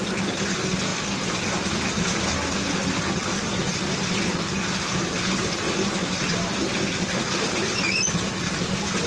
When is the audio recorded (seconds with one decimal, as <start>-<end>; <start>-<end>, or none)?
0.0-9.1